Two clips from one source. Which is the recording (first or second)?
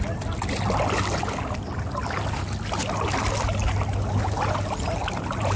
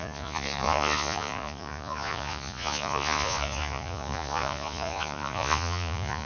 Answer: first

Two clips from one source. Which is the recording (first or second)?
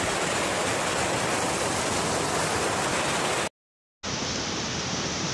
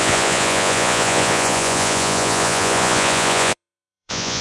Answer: first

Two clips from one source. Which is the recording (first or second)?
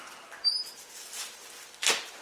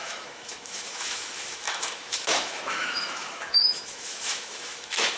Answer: first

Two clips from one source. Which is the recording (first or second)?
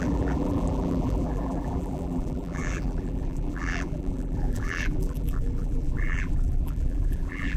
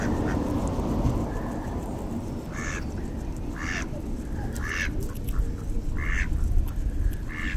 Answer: second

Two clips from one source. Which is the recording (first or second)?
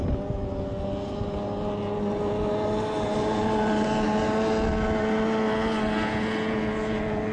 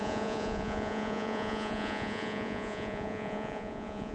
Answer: first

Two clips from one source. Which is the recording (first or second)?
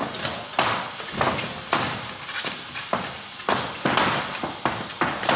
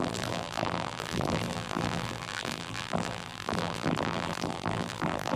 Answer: first